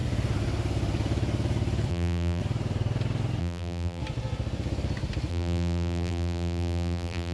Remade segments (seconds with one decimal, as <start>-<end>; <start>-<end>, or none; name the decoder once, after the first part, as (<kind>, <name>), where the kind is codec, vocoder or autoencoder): 1.9-2.4 (vocoder, BigVGAN v2); 3.4-4.0; 5.3-7.3